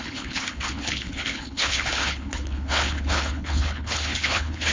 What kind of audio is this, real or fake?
fake